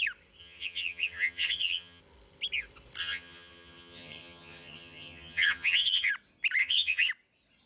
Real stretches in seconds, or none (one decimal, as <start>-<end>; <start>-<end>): 0.0-0.4; 2.0-3.0; 6.1-6.6; 7.1-7.7